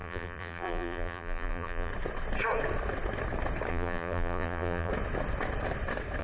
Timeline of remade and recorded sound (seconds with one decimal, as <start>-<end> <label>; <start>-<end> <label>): 0.0-1.9 remade; 1.9-3.7 recorded; 3.7-4.9 remade; 4.9-6.2 recorded